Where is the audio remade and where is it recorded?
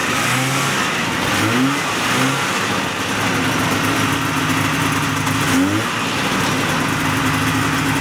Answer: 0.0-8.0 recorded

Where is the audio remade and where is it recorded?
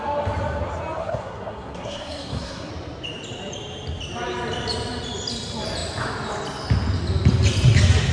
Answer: 0.0-1.0 recorded; 1.0-2.7 remade; 2.7-8.1 recorded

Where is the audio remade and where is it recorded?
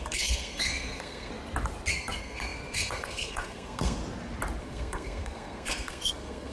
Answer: 0.0-1.3 remade; 1.3-1.9 recorded; 1.9-4.0 remade; 4.0-4.6 recorded; 4.6-6.5 remade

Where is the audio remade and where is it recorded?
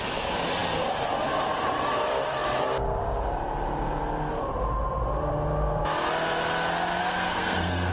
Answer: 0.0-7.0 recorded; 7.0-7.9 remade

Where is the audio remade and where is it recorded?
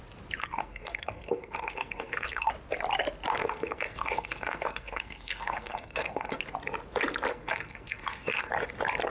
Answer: 0.0-0.4 recorded; 0.4-2.5 remade; 2.5-3.4 recorded; 3.4-6.4 remade; 6.4-7.3 recorded; 7.3-8.5 remade; 8.5-9.1 recorded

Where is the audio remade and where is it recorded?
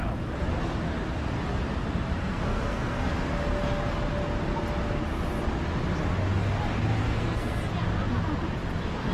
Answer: 0.0-2.2 recorded; 2.2-3.1 remade; 3.1-7.0 recorded; 7.0-7.6 remade; 7.6-9.1 recorded